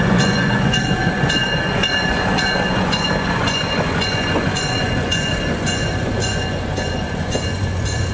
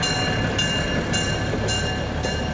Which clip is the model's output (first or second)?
first